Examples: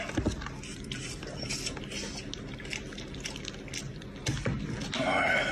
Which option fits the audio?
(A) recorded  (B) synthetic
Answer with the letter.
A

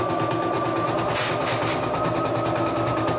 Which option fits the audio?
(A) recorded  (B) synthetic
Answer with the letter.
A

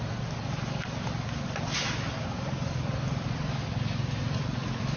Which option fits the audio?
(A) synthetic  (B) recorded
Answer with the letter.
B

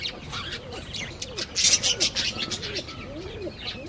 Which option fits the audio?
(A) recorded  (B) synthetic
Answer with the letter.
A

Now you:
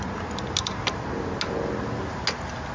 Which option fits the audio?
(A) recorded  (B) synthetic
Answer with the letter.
A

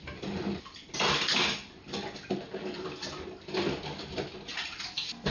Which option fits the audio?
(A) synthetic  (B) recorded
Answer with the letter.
B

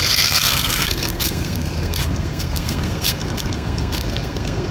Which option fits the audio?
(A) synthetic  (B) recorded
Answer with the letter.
A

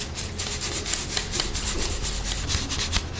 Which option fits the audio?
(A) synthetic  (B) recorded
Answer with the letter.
B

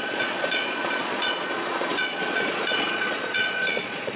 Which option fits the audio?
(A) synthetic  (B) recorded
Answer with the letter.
A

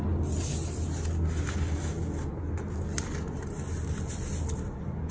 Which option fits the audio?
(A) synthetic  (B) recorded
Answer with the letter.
B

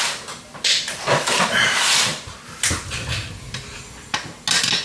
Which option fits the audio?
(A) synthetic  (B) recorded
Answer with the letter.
B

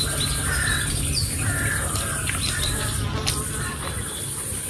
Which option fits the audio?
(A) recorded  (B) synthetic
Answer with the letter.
A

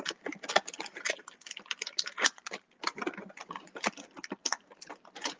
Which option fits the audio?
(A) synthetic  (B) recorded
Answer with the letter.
B